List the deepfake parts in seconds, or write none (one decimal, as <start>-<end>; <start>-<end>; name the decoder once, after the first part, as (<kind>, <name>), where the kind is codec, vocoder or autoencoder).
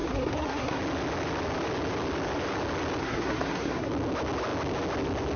0.0-0.8 (codec, SNAC); 3.0-3.9